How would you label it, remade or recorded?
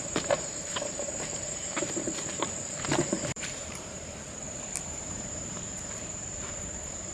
remade